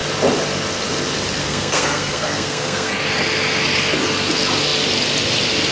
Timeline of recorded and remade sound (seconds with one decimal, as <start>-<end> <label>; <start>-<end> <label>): 0.0-1.4 recorded; 1.4-2.9 remade; 2.9-5.7 recorded